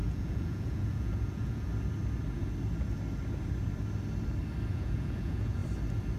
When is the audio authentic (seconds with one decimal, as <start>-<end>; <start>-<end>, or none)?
1.7-4.7; 5.6-6.2